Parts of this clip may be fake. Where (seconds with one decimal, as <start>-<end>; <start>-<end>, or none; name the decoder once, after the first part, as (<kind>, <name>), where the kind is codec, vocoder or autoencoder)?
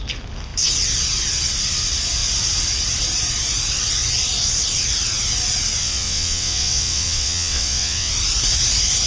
5.8-8.1 (vocoder, WaveNeXt)